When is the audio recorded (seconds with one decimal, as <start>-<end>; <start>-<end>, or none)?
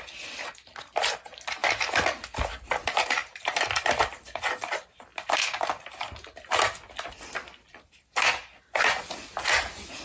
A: 0.0-3.2; 4.4-10.0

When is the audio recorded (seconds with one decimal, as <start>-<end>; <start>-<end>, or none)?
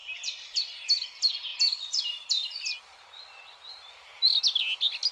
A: 0.6-1.5; 4.4-5.1